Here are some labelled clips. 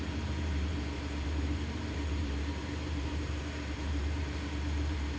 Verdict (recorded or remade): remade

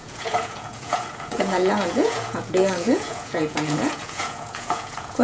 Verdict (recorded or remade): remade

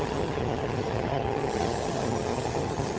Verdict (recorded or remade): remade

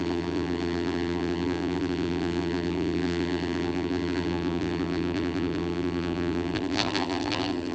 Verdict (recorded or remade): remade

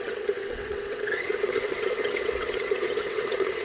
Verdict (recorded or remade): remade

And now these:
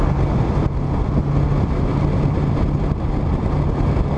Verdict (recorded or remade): recorded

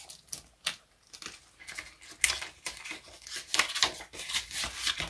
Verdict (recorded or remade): recorded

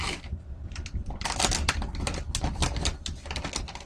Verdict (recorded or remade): remade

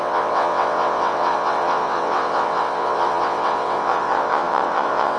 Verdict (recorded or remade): remade